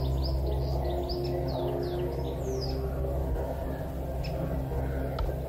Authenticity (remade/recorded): recorded